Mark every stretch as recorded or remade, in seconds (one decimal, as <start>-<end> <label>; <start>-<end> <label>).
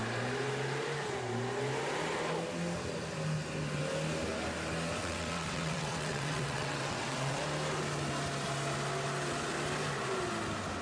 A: 0.0-5.0 recorded; 5.0-7.4 remade; 7.4-10.8 recorded